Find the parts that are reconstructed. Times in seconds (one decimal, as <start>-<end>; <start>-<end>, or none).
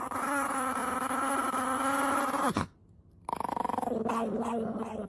0.0-0.8; 1.3-2.8; 4.3-5.1